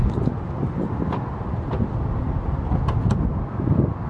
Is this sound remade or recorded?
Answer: recorded